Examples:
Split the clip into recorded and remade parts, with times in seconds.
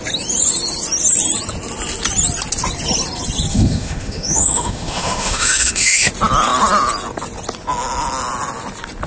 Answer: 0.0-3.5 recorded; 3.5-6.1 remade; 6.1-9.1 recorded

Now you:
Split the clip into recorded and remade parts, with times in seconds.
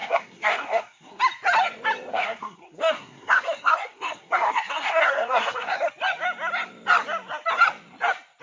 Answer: 0.0-1.2 remade; 1.2-2.1 recorded; 2.1-5.9 remade; 5.9-8.4 recorded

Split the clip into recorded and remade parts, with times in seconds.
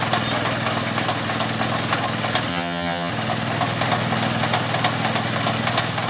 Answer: 0.0-2.5 recorded; 2.5-3.1 remade; 3.1-6.1 recorded